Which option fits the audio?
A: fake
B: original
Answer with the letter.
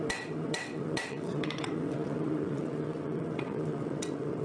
A